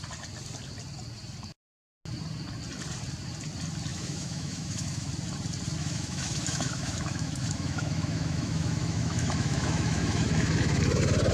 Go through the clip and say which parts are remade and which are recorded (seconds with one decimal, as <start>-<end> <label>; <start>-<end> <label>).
0.0-3.9 recorded; 3.9-5.1 remade; 5.1-5.8 recorded; 5.8-10.8 remade; 10.8-11.3 recorded